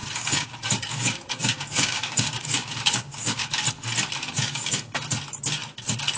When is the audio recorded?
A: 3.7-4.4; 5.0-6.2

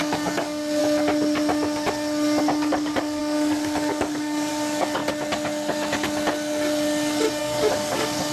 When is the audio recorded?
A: 0.8-2.4; 5.0-7.4